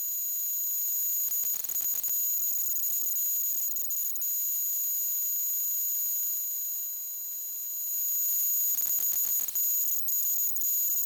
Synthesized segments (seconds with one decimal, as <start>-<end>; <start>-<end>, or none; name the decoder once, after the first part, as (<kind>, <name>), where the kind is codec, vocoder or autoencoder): none